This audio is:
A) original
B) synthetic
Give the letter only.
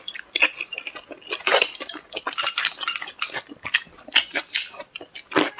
A